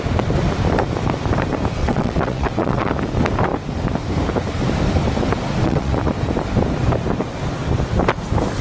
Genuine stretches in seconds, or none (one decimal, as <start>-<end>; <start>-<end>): 0.0-1.8; 2.9-5.6; 6.1-8.6